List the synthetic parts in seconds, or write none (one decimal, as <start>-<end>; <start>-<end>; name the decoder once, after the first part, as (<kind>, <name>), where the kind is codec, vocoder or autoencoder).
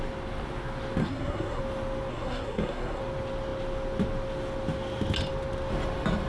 1.0-1.6 (codec, SNAC); 2.1-3.0